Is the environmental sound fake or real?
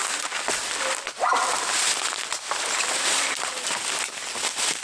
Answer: real